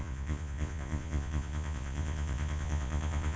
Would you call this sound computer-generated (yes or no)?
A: yes